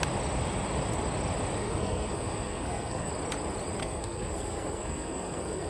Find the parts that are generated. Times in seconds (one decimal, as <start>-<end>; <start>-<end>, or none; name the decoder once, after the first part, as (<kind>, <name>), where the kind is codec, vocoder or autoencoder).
1.6-3.1 (codec, SNAC); 3.8-5.7